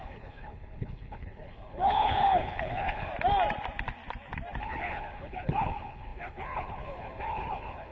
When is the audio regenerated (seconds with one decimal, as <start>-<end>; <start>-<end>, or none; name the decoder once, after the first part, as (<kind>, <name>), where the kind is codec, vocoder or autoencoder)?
0.0-3.1 (codec, HILCodec); 4.6-7.9